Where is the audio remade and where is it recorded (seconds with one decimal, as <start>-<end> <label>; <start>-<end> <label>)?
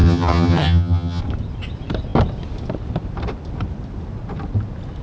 0.0-1.2 remade; 1.2-5.0 recorded